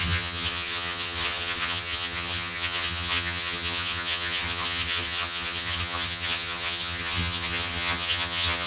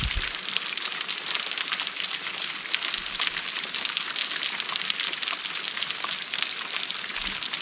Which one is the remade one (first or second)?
first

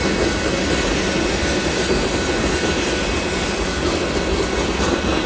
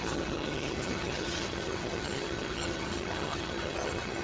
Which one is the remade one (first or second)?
second